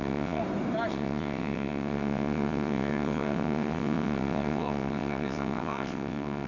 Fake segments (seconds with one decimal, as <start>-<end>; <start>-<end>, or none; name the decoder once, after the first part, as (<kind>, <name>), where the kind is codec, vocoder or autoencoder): 0.0-0.4 (vocoder, WaveNeXt); 0.9-6.5